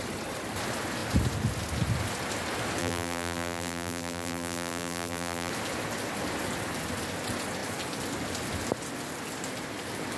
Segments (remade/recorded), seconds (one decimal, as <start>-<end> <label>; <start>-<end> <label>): 0.0-2.8 recorded; 2.8-5.5 remade; 5.5-10.2 recorded